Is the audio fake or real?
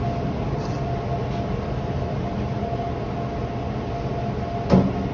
real